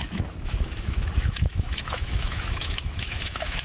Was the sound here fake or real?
fake